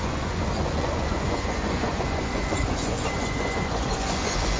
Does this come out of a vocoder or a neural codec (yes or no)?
yes